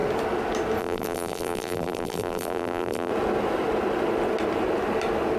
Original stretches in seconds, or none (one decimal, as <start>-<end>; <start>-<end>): 0.0-0.8; 3.1-5.4